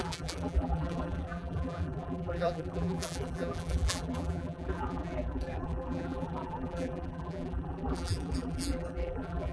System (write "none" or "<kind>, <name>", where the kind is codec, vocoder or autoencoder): vocoder, BigVGAN v2